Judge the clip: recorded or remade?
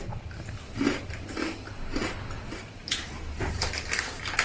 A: recorded